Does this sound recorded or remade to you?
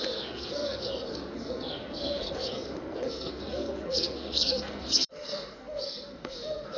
remade